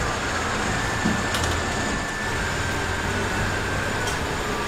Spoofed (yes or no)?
no